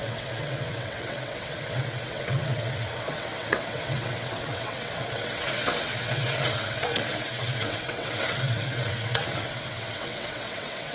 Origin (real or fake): fake